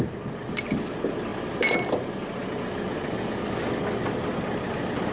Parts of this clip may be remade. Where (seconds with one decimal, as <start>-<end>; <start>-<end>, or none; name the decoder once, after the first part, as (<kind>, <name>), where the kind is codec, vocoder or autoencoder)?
none